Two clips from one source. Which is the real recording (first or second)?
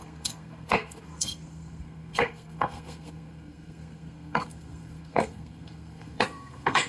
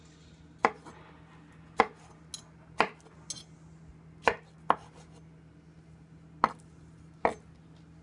second